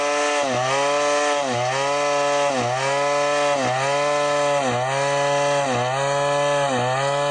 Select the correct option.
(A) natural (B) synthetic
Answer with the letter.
A